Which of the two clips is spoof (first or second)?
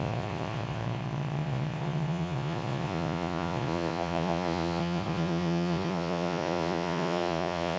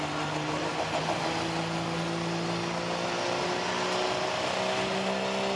first